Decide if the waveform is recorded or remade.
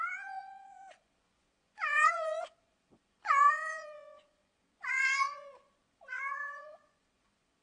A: remade